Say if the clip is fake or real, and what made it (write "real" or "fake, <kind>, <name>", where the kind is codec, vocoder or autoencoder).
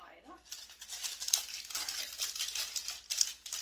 real